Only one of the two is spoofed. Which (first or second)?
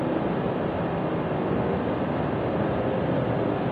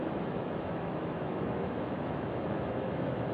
second